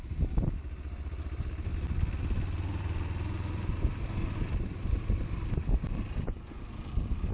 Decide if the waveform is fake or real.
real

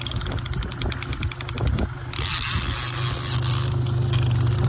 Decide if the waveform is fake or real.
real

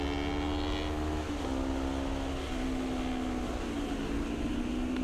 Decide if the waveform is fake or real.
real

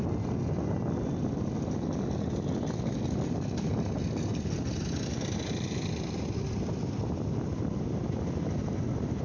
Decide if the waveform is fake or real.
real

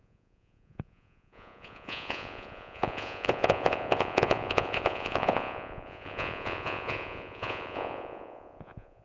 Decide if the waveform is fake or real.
fake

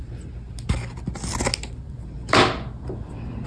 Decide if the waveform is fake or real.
real